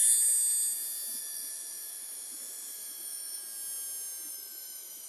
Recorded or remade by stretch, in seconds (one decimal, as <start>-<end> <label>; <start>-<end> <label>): 0.0-1.2 recorded; 1.2-3.4 remade; 3.4-4.3 recorded; 4.3-5.1 remade